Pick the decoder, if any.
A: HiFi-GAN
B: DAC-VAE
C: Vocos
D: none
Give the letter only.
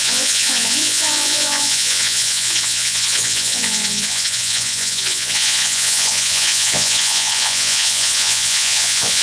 C